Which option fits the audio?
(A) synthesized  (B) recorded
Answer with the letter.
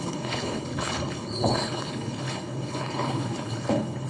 A